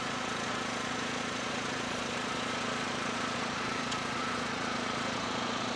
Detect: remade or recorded remade